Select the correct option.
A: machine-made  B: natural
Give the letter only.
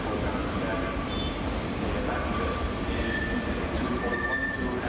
B